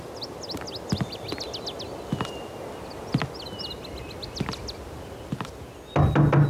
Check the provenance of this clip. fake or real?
real